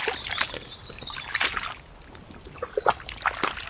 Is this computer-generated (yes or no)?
no